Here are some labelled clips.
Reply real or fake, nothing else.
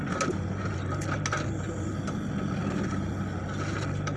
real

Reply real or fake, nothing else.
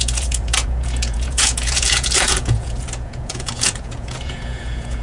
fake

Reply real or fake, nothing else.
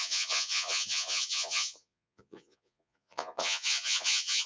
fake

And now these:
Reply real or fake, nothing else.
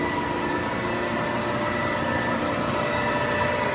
real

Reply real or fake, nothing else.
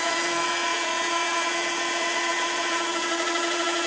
fake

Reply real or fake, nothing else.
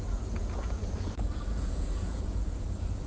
fake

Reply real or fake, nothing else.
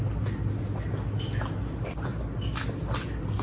real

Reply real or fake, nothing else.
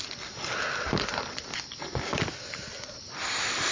real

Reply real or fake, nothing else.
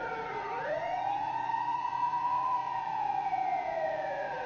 fake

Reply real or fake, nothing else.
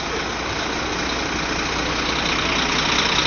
real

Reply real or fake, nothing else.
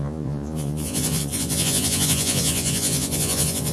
fake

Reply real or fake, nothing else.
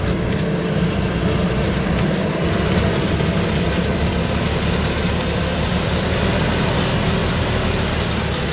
real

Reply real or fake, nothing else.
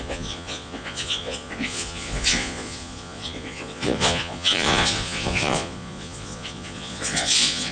fake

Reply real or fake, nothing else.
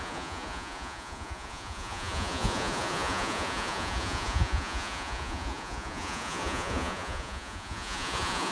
fake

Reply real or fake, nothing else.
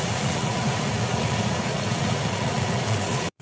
fake